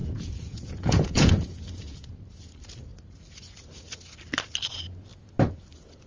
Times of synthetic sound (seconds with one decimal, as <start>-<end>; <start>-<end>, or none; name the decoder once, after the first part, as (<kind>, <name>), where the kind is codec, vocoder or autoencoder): 0.0-2.1 (vocoder, Vocos)